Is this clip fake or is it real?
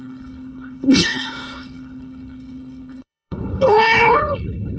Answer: fake